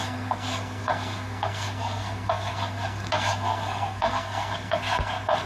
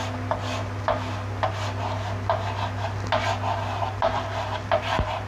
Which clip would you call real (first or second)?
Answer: second